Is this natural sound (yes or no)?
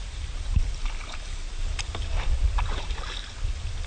yes